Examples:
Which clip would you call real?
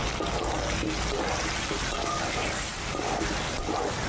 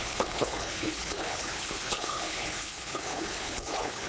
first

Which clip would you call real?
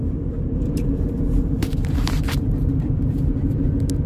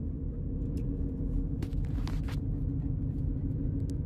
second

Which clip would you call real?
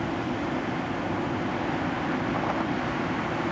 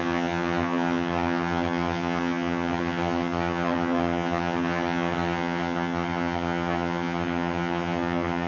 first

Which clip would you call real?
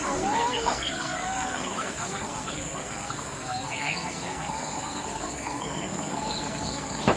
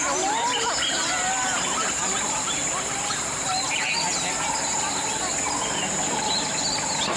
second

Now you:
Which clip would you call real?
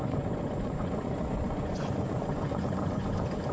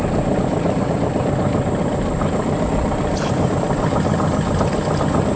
second